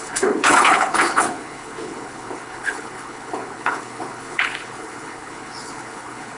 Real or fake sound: fake